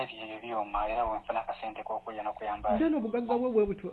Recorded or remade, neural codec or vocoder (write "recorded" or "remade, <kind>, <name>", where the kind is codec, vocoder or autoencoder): recorded